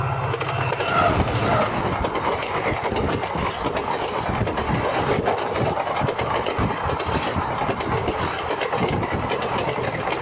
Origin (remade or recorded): recorded